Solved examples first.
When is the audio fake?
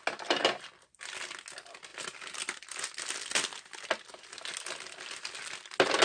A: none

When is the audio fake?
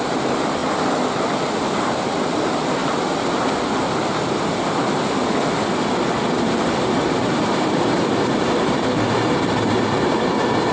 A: 0.0-0.6; 1.5-2.8; 6.8-10.7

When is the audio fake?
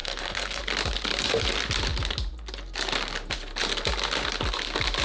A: 0.0-0.6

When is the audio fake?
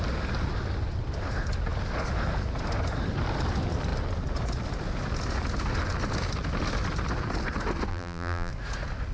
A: 7.9-8.5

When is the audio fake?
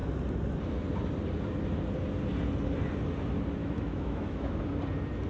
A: 3.6-4.6